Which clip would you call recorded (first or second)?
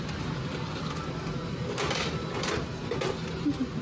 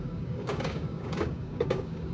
first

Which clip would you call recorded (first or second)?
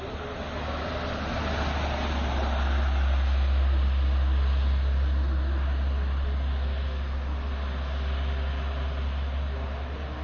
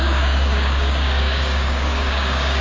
first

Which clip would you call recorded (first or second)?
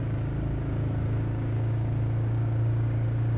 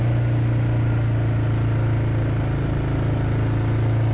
second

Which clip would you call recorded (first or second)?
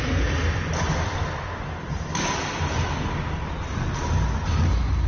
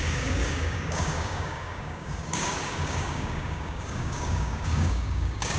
first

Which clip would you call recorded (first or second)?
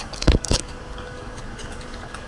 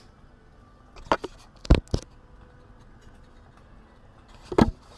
second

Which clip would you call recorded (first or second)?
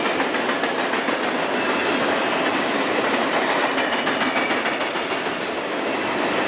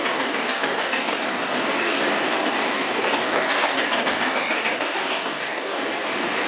first